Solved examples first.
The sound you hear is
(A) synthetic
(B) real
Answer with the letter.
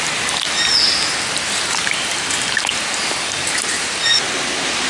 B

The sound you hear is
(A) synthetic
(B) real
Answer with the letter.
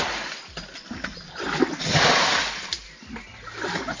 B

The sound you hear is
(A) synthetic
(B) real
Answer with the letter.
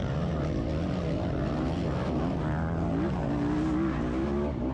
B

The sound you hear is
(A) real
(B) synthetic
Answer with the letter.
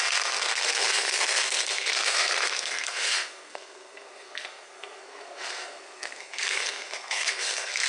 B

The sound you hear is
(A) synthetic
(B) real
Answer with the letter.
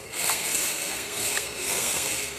A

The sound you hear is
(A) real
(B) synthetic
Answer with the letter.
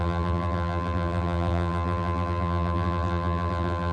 B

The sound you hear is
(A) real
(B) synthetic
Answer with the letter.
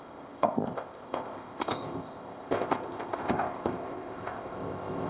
B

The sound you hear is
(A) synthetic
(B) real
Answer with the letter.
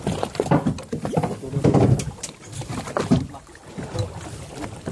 B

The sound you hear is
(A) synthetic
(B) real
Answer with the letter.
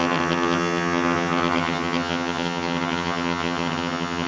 A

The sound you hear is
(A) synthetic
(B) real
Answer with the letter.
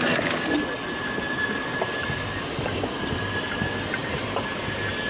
B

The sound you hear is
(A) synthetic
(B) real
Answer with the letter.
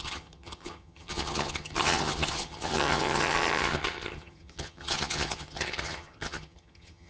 A